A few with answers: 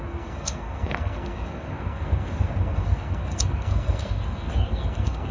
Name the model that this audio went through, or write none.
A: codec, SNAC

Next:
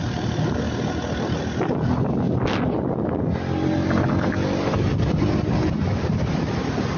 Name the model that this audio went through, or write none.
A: none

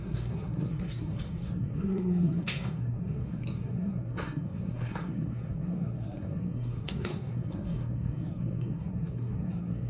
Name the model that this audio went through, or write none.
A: codec, SNAC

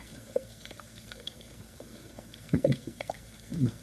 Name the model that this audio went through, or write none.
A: codec, SNAC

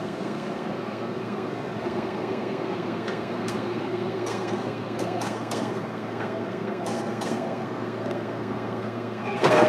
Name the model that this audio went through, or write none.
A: codec, SNAC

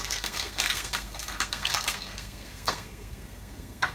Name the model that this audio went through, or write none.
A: codec, SNAC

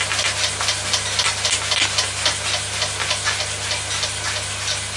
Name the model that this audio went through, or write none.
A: none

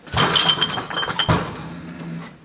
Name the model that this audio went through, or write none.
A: none